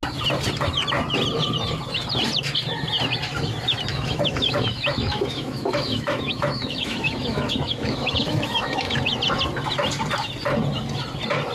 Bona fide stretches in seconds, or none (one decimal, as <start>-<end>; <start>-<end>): 0.0-3.9; 9.0-11.5